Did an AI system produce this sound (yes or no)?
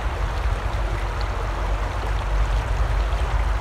no